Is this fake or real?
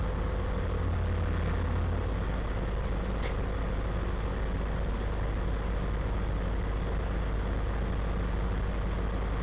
real